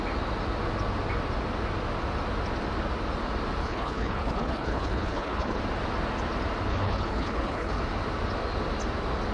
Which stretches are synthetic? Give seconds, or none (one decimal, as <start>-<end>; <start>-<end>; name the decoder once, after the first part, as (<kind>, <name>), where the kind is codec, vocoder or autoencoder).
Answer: 3.6-5.6 (codec, HILCodec); 6.7-7.8

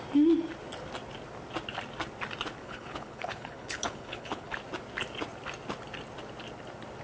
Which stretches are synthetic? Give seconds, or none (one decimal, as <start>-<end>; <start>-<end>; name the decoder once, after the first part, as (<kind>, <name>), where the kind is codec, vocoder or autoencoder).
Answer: 2.6-4.5 (codec, HILCodec)

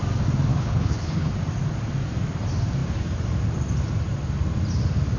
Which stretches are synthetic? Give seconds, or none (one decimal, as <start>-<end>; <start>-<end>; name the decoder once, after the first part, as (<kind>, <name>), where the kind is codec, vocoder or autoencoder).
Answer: 0.5-1.3 (codec, HILCodec)

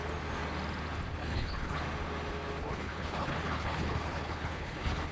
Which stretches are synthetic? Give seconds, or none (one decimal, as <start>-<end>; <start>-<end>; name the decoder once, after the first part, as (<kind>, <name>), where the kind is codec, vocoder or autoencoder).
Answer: 1.2-1.8 (codec, HILCodec); 2.6-5.1